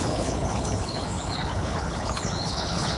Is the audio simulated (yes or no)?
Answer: yes